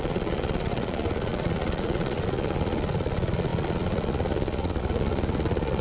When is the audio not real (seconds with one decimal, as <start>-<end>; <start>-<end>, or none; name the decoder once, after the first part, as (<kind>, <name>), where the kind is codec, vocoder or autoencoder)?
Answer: 0.0-5.8 (vocoder, Vocos)